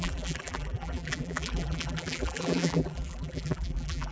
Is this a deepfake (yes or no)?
yes